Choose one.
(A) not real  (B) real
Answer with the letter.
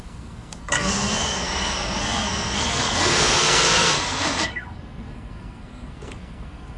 A